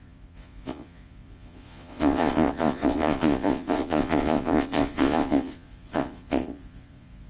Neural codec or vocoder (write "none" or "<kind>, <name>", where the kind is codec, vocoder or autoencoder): vocoder, Vocos